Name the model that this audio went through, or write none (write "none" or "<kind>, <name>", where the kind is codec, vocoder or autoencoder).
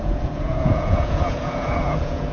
vocoder, Vocos